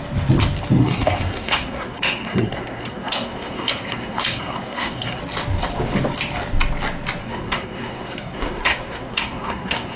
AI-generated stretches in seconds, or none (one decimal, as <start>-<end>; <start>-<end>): 0.8-5.2; 7.2-10.0